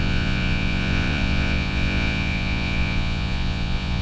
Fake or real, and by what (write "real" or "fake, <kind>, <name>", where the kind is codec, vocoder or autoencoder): fake, vocoder, Vocos